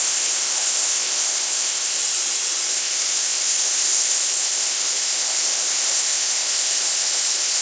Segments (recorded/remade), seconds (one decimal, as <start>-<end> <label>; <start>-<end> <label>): 0.0-2.0 remade; 2.0-2.7 recorded; 2.7-7.6 remade